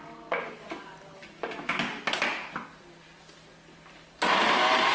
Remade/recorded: recorded